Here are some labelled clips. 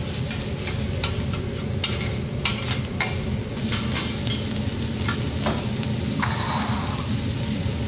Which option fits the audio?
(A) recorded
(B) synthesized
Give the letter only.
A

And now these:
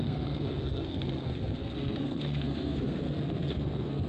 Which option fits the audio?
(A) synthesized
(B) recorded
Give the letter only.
A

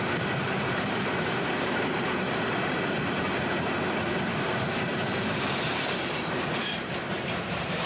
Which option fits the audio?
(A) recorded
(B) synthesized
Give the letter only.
B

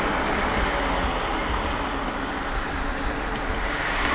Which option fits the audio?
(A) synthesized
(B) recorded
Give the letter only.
B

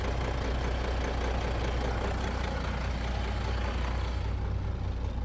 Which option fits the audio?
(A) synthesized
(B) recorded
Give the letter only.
B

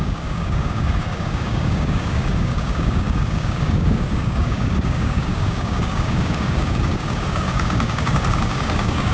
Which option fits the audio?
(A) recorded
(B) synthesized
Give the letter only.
B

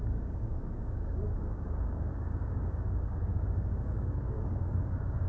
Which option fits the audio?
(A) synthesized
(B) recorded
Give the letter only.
A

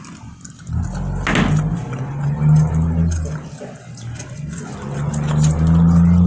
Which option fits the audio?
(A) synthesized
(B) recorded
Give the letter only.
B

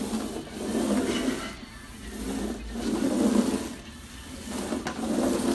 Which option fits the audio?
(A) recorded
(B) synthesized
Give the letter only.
A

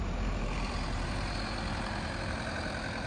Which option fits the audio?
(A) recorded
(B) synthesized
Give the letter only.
B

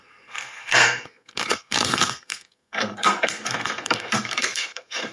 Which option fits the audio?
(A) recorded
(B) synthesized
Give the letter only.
B